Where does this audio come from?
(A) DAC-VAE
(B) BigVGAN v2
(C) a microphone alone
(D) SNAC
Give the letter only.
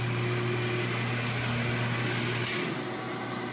C